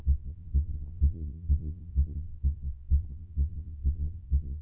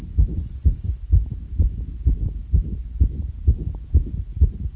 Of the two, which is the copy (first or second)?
first